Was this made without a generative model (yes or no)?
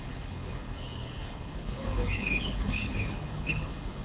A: no